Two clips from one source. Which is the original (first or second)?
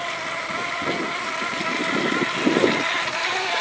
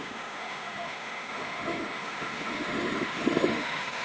first